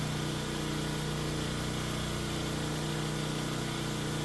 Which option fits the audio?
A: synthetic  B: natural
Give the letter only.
B